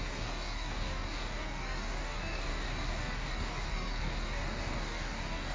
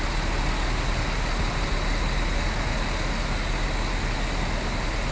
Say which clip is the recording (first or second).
second